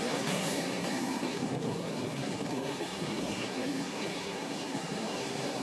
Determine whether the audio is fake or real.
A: fake